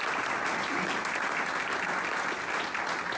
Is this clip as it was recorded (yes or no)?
yes